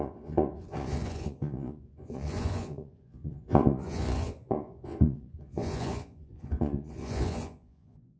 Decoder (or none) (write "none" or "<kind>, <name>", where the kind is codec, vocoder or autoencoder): vocoder, Vocos